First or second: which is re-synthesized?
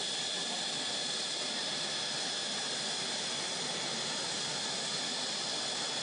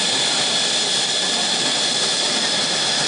second